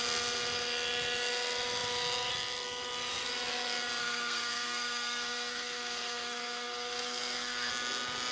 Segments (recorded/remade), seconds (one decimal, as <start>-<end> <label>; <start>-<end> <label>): 0.0-4.0 recorded; 4.0-7.7 remade; 7.7-8.3 recorded